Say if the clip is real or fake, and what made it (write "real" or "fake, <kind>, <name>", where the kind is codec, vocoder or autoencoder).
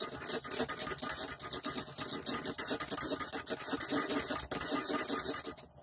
real